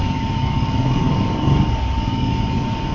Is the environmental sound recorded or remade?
remade